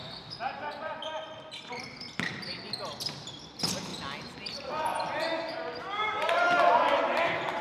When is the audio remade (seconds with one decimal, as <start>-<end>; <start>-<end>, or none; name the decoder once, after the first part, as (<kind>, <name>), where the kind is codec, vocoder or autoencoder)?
none